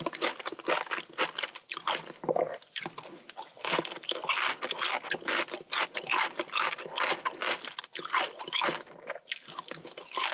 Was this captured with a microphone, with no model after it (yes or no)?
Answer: yes